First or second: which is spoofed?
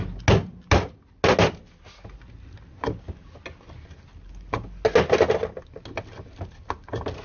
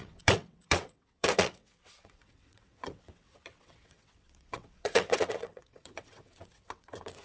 second